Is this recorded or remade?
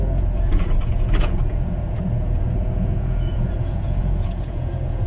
remade